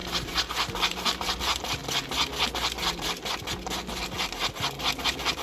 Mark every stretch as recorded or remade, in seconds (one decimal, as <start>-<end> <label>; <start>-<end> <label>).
0.0-1.4 remade; 1.4-5.4 recorded